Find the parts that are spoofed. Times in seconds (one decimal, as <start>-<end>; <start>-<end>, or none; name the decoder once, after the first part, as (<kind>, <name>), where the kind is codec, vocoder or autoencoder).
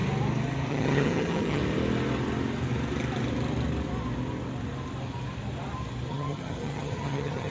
0.7-1.6 (vocoder, HiFi-GAN); 6.1-7.5